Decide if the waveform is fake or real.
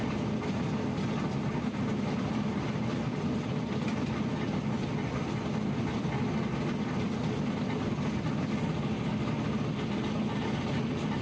real